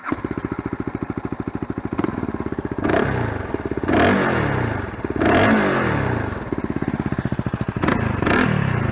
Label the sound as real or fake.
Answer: real